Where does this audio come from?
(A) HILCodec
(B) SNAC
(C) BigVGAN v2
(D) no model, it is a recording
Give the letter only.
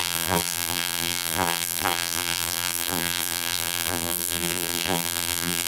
C